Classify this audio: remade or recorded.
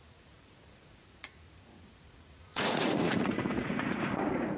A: remade